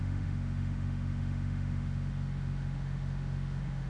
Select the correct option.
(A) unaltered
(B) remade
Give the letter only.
B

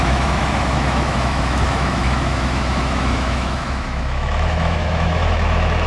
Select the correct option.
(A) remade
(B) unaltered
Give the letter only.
A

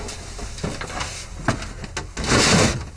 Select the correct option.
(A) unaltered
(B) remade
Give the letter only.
A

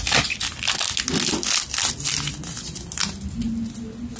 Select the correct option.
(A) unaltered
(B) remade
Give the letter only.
A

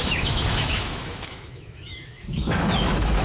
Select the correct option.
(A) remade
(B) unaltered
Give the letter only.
A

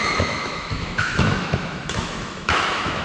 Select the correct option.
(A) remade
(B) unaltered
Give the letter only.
A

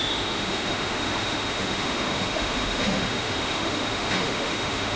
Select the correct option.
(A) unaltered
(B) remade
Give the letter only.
B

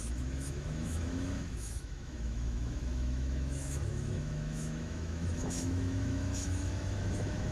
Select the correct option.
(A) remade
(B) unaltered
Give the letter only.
A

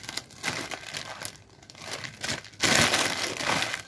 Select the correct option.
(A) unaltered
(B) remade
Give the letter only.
A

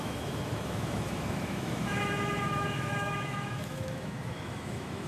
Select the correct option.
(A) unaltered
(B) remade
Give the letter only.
B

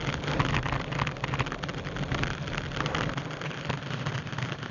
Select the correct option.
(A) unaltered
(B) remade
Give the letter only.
A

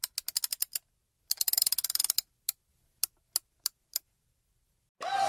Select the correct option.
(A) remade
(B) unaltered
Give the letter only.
B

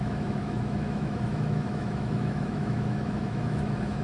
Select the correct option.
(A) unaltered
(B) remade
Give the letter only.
B